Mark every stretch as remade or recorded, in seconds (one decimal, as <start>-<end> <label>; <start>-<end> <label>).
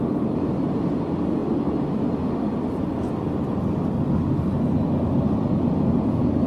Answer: 0.0-6.5 recorded